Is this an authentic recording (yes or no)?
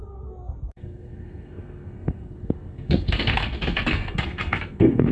no